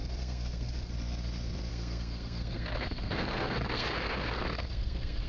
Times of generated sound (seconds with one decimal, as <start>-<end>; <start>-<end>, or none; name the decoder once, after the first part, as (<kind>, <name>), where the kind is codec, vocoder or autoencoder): 0.0-0.9 (codec, SNAC); 1.7-5.3